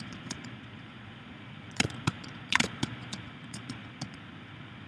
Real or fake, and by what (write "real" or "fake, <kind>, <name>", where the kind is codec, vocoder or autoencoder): fake, vocoder, Vocos